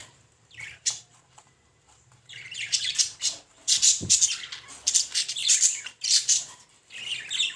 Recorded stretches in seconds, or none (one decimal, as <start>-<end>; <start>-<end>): 4.2-5.4; 6.9-7.6